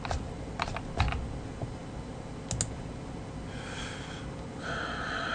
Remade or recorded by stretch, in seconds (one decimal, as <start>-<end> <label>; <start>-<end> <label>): 0.0-5.3 recorded